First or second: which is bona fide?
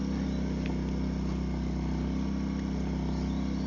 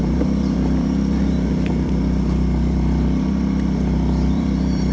first